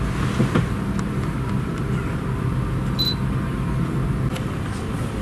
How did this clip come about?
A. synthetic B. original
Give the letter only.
B